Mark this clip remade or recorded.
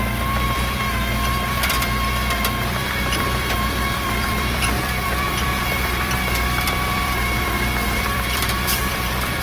remade